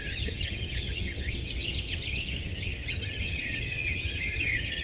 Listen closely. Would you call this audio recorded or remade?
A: remade